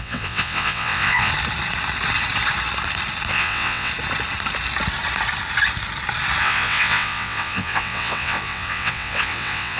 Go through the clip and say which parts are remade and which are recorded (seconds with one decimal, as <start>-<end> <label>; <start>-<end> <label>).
0.0-1.3 remade; 1.3-3.3 recorded; 3.3-3.9 remade; 3.9-6.4 recorded; 6.4-9.8 remade